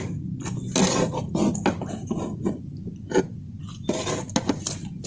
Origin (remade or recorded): recorded